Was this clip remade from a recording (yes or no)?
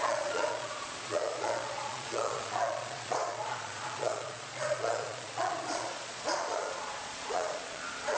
yes